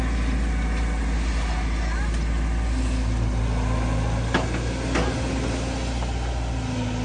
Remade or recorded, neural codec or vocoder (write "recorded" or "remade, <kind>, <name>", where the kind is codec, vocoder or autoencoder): recorded